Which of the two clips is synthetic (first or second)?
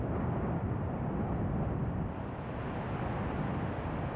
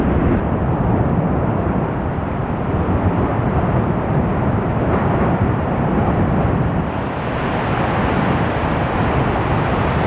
second